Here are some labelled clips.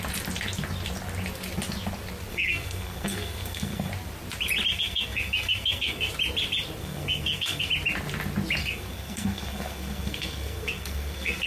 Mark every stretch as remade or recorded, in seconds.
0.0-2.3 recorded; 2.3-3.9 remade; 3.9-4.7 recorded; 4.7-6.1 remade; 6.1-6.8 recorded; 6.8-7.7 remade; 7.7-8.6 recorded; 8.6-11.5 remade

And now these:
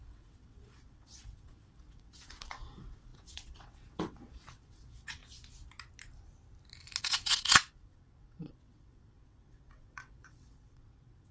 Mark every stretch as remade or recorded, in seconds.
0.0-5.2 remade; 5.2-7.0 recorded; 7.0-11.3 remade

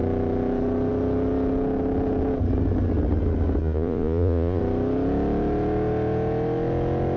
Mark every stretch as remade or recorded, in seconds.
0.0-3.6 recorded; 3.6-4.6 remade; 4.6-7.2 recorded